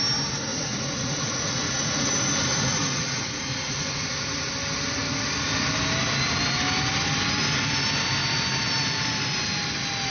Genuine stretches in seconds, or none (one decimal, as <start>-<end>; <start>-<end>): 0.0-0.5; 2.1-2.5; 4.5-10.1